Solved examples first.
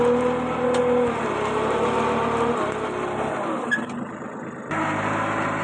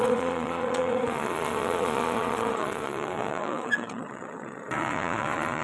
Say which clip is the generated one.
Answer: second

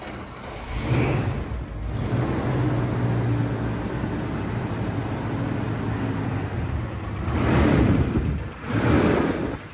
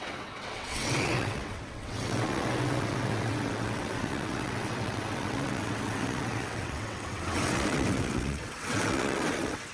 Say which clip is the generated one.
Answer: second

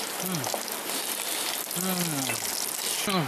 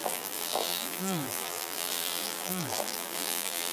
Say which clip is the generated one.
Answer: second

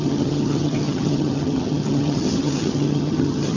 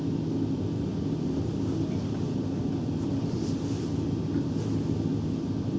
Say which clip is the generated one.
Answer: first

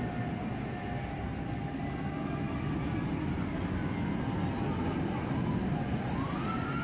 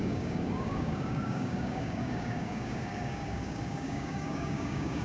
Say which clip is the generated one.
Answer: second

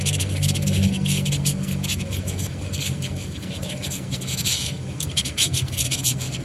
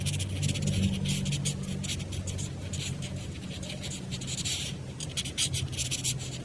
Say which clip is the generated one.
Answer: first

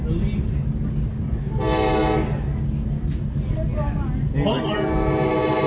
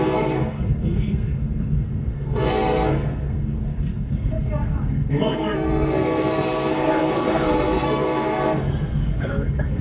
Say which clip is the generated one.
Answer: second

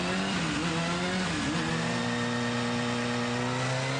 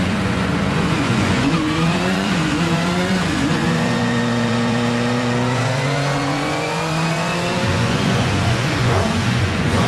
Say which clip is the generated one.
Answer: second